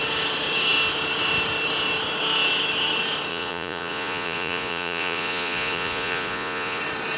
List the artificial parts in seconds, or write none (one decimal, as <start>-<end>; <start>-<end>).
3.3-6.8